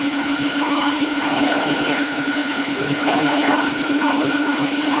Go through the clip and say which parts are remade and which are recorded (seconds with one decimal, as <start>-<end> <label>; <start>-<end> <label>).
0.0-5.0 remade